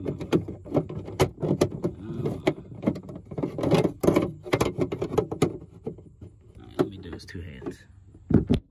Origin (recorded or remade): recorded